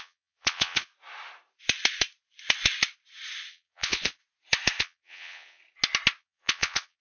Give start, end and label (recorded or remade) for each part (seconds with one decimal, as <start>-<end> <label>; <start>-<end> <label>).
0.0-0.9 remade; 0.9-3.5 recorded; 3.5-4.2 remade; 4.2-4.8 recorded; 4.8-5.6 remade; 5.6-6.2 recorded; 6.2-7.0 remade

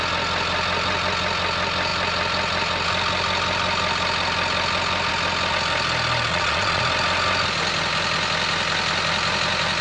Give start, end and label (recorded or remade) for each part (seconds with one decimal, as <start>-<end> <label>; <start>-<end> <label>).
0.0-6.3 recorded; 6.3-6.8 remade; 6.8-9.8 recorded

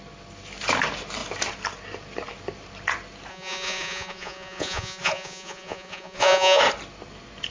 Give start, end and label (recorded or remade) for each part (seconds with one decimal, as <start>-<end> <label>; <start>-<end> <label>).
0.0-3.3 recorded; 3.3-6.6 remade; 6.6-7.5 recorded

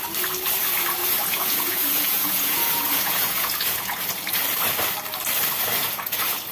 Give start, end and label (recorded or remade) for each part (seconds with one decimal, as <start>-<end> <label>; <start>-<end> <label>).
0.0-1.0 recorded; 1.0-4.4 remade; 4.4-5.8 recorded; 5.8-6.5 remade

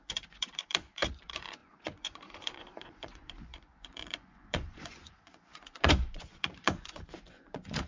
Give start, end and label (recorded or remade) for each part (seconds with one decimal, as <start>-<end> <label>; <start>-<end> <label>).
0.0-7.9 remade